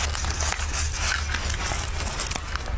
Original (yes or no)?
yes